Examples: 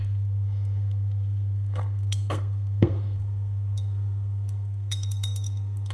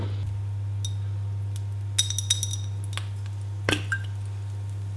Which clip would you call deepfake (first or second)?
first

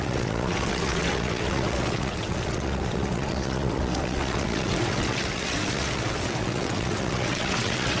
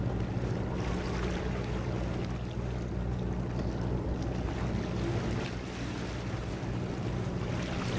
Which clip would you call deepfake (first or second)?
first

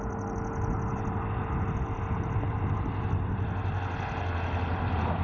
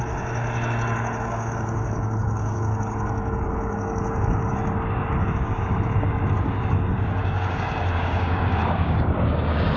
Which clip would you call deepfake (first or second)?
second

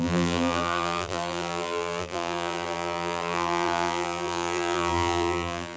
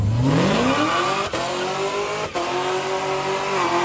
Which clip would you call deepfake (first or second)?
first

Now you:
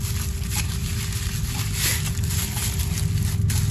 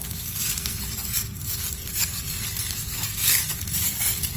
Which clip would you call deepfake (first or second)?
second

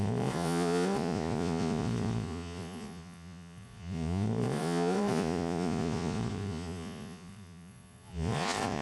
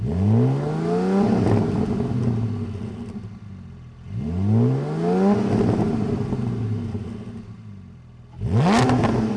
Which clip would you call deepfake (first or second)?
first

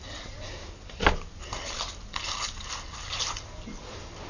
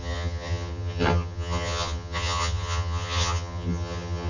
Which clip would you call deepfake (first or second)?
second